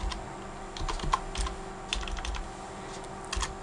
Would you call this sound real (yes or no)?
yes